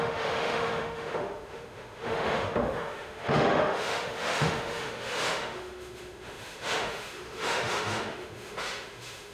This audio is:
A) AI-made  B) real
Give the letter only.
A